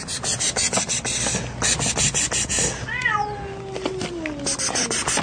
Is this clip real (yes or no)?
yes